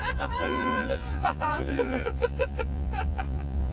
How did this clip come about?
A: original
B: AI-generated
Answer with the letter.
B